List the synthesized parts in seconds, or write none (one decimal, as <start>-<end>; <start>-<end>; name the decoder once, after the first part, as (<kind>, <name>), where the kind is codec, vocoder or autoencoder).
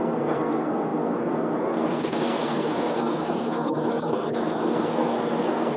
0.0-5.8 (codec, SNAC)